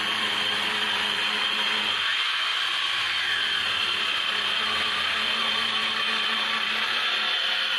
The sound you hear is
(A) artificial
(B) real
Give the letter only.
B